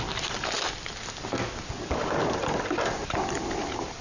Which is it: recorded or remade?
recorded